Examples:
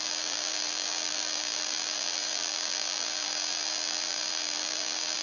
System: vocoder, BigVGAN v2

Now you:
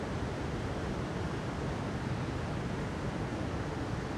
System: none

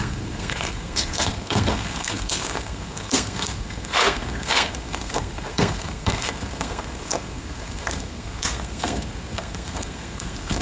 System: codec, SNAC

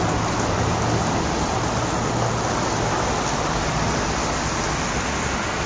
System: none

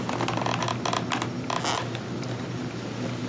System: none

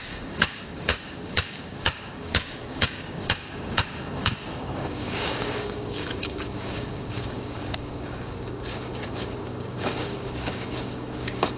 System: codec, DAC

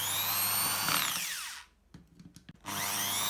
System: none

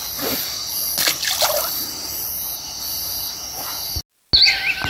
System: none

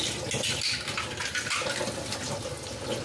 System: none